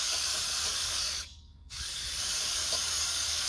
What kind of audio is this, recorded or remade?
remade